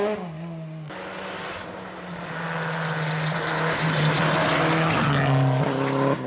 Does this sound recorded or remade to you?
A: recorded